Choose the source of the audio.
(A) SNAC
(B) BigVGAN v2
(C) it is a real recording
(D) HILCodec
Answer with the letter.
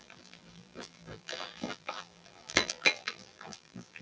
B